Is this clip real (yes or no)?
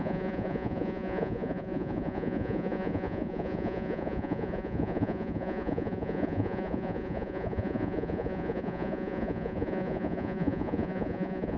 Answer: no